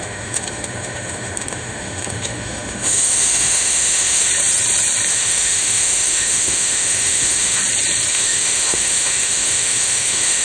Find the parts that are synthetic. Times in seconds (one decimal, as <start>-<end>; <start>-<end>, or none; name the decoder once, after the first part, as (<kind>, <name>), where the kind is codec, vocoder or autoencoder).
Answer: 0.0-4.3 (autoencoder, DAC-VAE); 5.1-7.6; 8.1-10.4